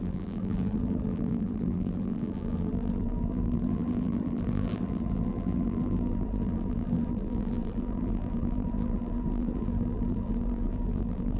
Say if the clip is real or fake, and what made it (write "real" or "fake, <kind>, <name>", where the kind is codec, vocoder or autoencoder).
fake, vocoder, BigVGAN v2